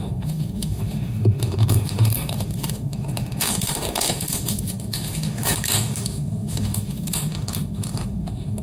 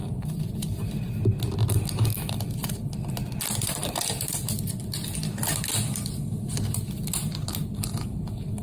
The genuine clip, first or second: second